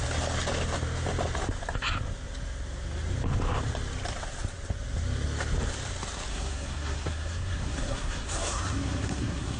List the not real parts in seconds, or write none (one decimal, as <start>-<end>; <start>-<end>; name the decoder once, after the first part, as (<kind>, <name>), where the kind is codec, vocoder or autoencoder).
6.3-9.6 (codec, SNAC)